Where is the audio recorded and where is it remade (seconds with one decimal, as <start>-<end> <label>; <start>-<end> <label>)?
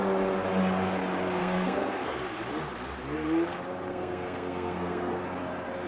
0.0-1.4 recorded; 1.4-2.2 remade; 2.2-3.9 recorded; 3.9-5.2 remade; 5.2-5.9 recorded